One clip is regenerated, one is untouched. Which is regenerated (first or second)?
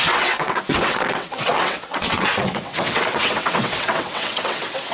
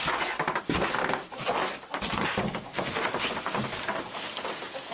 first